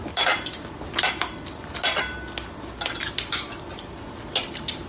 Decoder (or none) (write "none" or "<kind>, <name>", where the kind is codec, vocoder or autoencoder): none